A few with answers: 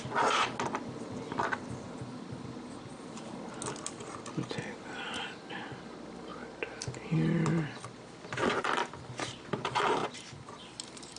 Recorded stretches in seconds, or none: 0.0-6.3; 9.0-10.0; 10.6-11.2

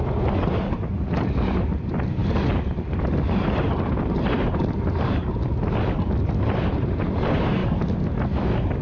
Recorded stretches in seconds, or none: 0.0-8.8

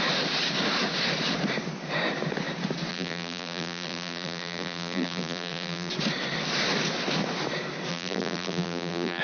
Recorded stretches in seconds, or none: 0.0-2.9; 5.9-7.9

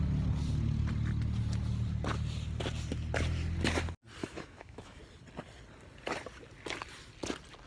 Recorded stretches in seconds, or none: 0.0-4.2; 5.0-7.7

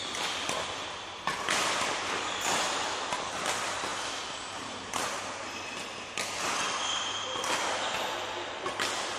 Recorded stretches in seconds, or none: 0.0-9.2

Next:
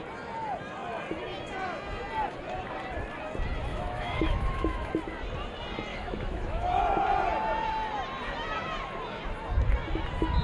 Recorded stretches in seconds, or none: 0.0-3.7; 4.9-5.9; 6.8-10.4